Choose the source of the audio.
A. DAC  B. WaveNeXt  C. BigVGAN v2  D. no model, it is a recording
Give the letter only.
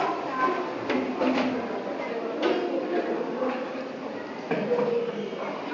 D